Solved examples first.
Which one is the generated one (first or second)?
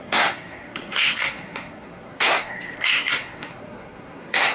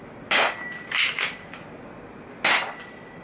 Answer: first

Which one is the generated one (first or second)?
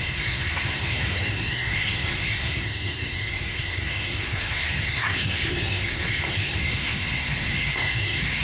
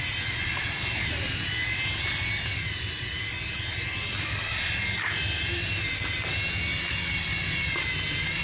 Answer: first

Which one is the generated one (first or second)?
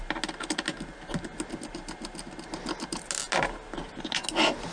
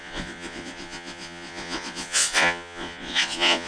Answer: second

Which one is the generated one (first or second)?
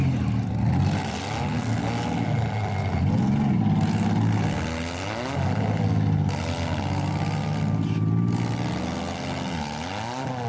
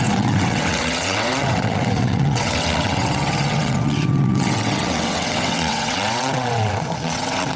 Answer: second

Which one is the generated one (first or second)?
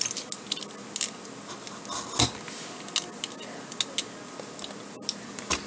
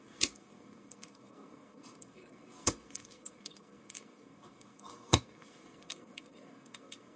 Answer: second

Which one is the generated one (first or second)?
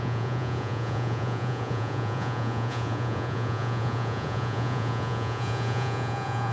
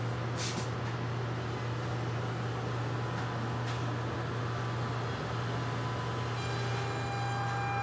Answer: first